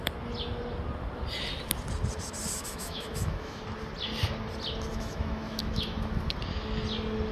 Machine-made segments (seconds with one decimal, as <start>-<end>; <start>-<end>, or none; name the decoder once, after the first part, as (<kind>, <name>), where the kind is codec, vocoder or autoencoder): 2.6-3.6 (autoencoder, DAC-VAE); 4.9-6.3